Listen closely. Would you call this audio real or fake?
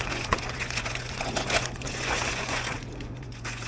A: fake